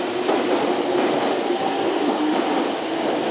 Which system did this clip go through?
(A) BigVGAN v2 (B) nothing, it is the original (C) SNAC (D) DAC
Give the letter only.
B